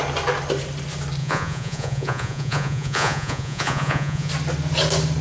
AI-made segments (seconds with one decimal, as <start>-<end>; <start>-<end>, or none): 1.2-4.3